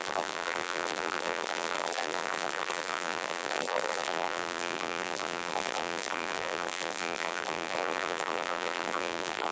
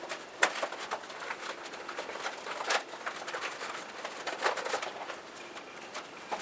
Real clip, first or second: second